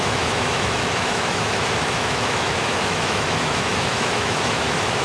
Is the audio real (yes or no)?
no